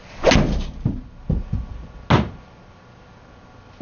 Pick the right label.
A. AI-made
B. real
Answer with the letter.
B